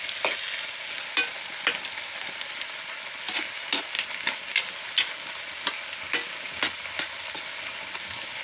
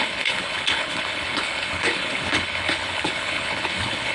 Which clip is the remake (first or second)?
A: second